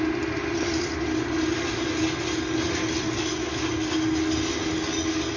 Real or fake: real